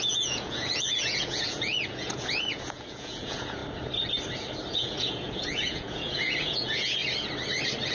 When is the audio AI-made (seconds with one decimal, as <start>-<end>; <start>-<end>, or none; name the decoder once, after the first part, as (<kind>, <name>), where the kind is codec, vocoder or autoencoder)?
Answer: 0.0-3.6 (vocoder, Vocos); 4.7-7.0